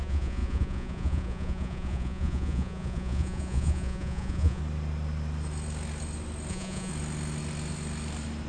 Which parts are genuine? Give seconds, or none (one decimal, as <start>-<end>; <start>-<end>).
4.6-6.5; 6.9-8.5